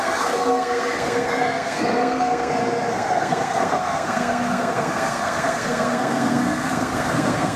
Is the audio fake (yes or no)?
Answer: yes